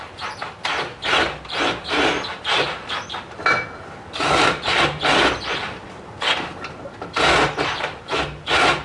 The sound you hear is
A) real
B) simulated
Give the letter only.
A